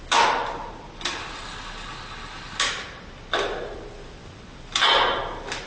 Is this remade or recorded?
recorded